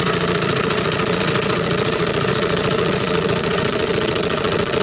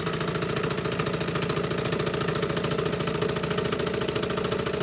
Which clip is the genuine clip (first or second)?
second